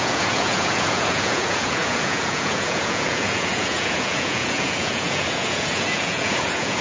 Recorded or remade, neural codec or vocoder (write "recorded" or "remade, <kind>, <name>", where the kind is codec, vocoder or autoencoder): remade, vocoder, Vocos